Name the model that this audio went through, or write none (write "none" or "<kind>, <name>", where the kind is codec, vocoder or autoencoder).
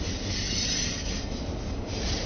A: none